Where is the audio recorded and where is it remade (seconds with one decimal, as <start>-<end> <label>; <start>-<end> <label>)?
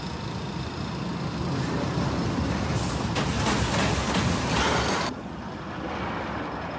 0.0-6.8 recorded